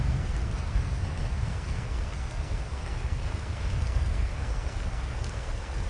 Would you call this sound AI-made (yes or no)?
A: yes